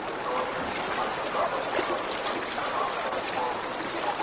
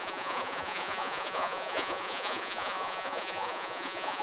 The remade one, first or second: second